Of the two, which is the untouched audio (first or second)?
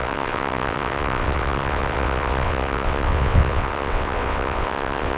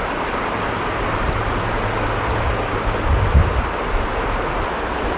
second